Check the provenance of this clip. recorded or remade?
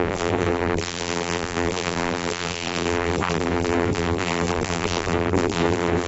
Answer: remade